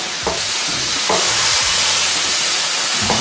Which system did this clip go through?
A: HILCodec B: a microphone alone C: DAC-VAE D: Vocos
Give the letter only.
D